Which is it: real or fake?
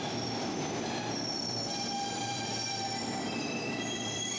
fake